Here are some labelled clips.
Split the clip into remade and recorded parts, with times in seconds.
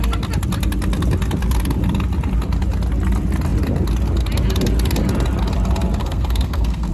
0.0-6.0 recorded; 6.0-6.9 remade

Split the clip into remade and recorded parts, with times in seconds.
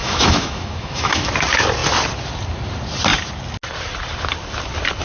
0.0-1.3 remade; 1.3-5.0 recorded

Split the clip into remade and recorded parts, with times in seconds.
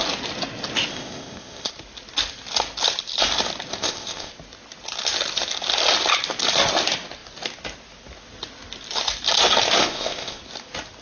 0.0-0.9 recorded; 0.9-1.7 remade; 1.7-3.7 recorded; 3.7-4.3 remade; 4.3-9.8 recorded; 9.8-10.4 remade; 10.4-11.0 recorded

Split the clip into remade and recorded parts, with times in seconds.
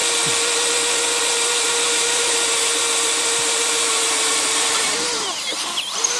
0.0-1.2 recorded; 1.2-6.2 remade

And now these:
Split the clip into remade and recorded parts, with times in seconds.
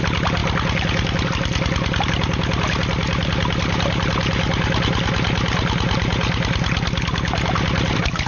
0.0-8.3 recorded